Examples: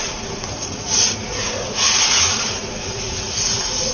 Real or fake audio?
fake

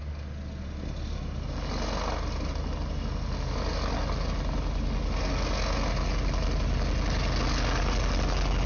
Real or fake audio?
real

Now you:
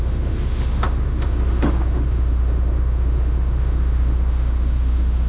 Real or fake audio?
fake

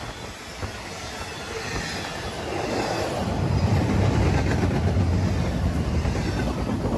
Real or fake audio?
real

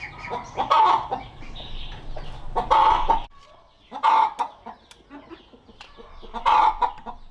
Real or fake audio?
real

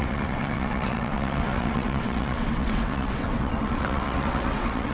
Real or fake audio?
fake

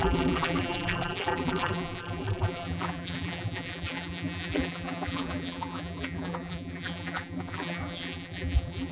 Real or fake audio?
fake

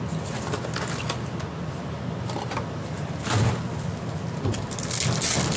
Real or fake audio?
real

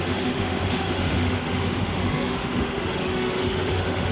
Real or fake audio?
fake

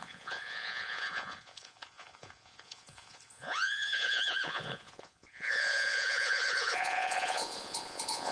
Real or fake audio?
fake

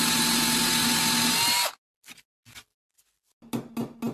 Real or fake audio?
real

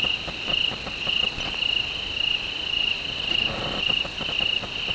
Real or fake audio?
real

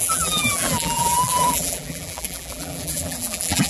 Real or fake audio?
fake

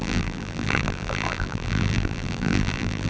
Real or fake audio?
fake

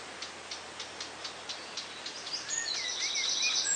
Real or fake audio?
real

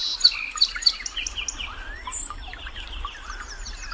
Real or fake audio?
fake